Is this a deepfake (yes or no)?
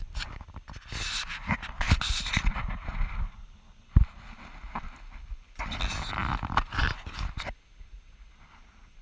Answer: no